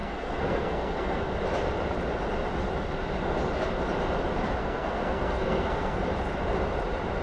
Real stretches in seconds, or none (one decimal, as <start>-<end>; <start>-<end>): 1.2-4.6; 6.0-7.2